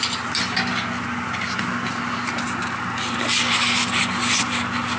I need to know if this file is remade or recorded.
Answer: recorded